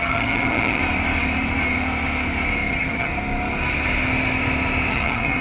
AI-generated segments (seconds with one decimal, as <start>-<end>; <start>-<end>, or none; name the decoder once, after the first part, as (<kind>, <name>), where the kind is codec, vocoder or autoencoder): 0.0-0.8 (vocoder, HiFi-GAN); 2.7-3.1; 4.9-5.4